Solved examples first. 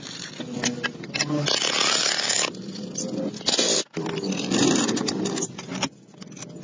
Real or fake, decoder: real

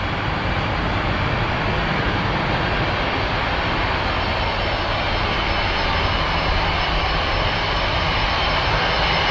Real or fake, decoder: real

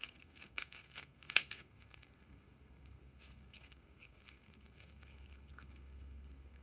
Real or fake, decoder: fake, codec, SNAC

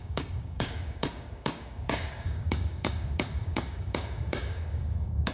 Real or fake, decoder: fake, codec, DAC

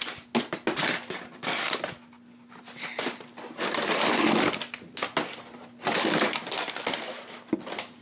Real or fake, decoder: real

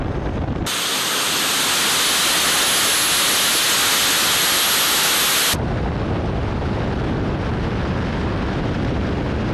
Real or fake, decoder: real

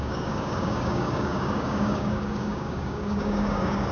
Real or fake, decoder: fake, codec, DAC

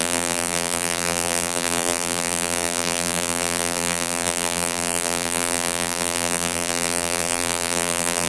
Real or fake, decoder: fake, vocoder, BigVGAN v2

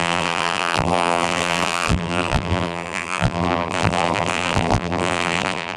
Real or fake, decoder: fake, vocoder, BigVGAN v2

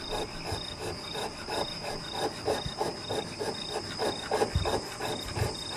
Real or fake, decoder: real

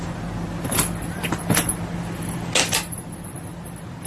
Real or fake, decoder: real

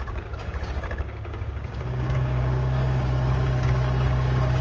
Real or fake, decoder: fake, codec, DAC